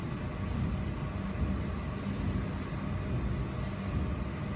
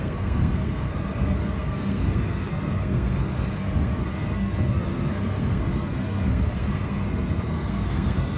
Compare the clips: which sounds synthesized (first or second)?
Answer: second